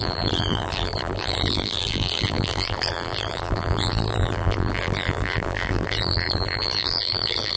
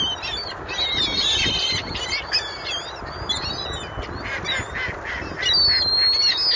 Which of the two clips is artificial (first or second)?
first